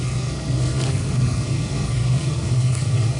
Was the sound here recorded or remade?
remade